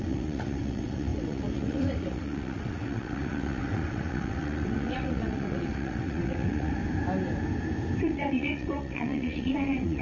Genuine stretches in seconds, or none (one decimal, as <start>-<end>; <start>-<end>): 6.8-8.0